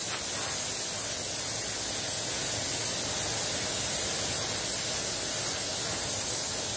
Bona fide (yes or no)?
yes